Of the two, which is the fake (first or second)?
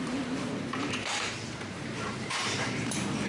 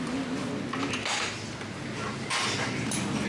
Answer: first